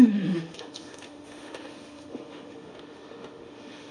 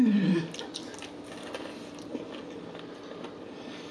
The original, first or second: second